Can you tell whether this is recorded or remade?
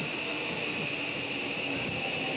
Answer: recorded